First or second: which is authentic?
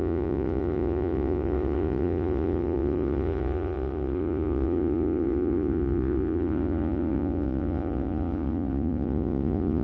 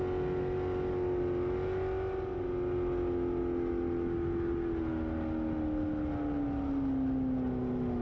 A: second